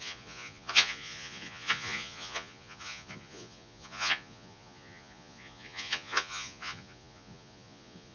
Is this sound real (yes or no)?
no